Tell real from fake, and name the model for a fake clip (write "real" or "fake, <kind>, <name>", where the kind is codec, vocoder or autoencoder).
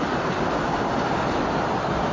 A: real